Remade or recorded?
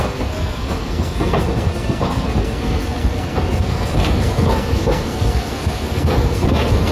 remade